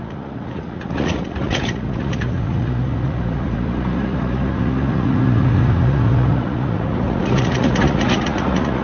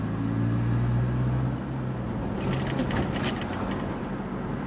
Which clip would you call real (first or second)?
second